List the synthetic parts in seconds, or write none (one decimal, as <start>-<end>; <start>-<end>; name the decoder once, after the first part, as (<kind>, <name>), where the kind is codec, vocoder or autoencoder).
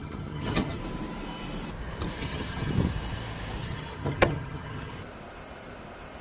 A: 0.0-0.8 (vocoder, HiFi-GAN); 2.2-2.7; 3.6-4.9